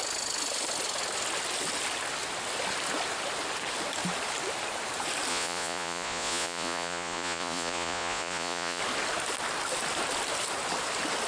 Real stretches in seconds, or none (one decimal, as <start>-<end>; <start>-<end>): 0.0-5.3; 8.8-11.3